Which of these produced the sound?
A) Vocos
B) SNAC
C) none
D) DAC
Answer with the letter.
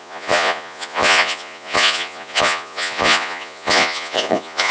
A